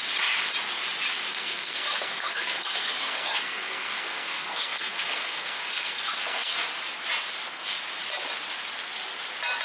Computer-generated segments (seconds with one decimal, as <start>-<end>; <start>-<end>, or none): 1.3-6.5